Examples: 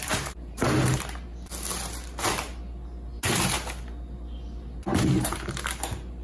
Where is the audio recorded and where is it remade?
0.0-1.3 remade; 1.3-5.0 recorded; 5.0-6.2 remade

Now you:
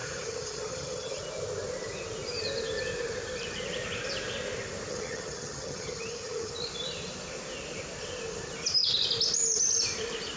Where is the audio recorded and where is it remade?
0.0-1.2 remade; 1.2-4.9 recorded; 4.9-6.5 remade; 6.5-10.4 recorded

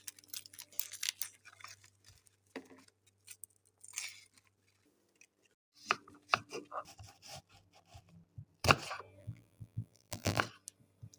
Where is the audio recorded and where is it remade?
0.0-9.2 recorded; 9.2-10.4 remade; 10.4-11.2 recorded

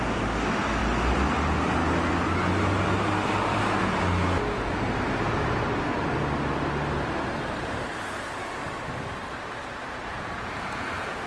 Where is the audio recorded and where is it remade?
0.0-10.1 recorded; 10.1-11.3 remade

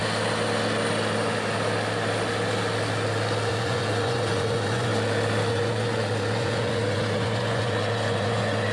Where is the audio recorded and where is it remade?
0.0-3.5 recorded; 3.5-4.9 remade; 4.9-5.5 recorded; 5.5-8.7 remade

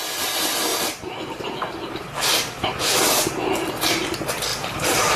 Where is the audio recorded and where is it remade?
0.0-0.7 recorded; 0.7-3.7 remade; 3.7-4.5 recorded; 4.5-5.2 remade

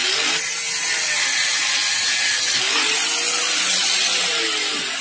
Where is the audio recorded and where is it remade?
0.0-5.0 recorded

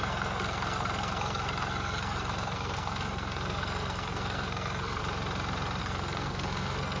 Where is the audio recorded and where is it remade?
0.0-5.0 remade; 5.0-5.8 recorded; 5.8-7.0 remade